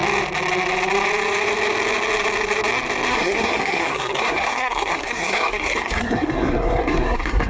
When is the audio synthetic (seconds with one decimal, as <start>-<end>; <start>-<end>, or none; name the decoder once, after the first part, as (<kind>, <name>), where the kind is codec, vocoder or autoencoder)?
3.1-7.5 (codec, SNAC)